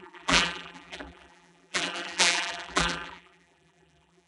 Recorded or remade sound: remade